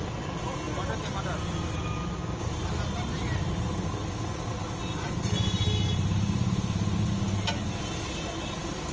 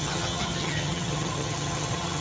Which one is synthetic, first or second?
second